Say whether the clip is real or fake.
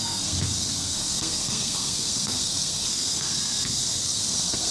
fake